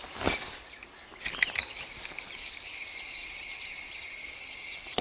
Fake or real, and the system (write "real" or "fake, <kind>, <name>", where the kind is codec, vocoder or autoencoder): real